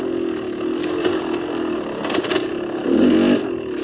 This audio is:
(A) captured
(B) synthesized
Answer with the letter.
A